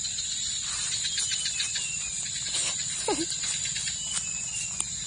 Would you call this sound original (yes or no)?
yes